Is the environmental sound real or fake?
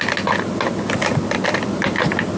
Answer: real